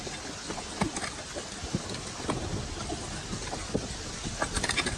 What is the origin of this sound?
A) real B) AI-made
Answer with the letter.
A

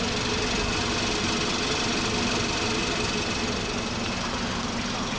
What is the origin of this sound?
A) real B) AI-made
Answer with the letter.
A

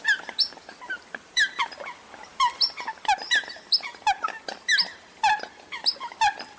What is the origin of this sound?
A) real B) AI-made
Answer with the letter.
A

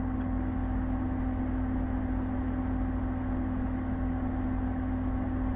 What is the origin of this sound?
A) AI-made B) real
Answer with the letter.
B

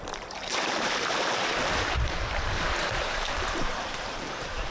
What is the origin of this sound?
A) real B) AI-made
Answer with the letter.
B